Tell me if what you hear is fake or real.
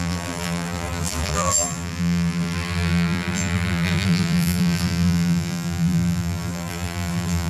fake